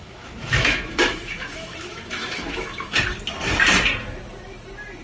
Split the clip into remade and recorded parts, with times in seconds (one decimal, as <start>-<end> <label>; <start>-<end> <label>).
0.0-3.0 remade; 3.0-5.0 recorded